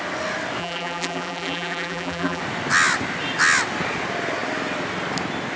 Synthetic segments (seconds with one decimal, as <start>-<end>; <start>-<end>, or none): 0.6-2.4